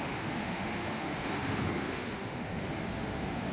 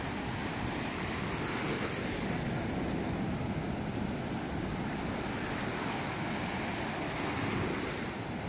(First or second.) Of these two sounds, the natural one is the second